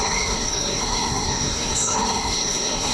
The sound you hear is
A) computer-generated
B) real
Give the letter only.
A